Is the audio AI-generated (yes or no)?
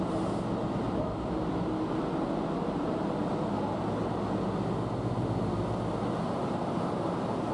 no